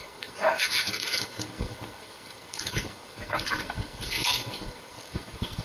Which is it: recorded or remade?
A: remade